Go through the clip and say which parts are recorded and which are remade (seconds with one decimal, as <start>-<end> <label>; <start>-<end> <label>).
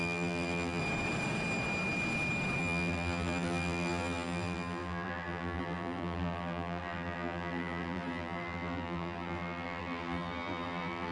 0.0-0.8 remade; 0.8-2.6 recorded; 2.6-11.1 remade